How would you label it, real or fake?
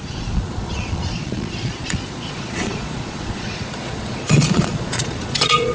fake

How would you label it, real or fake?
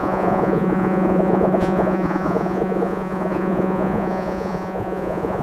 fake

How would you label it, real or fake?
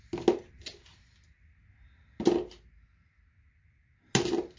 real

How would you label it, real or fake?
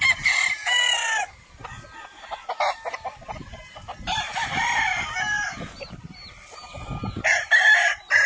real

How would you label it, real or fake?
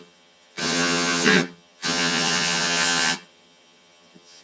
fake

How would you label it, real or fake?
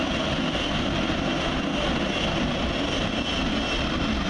real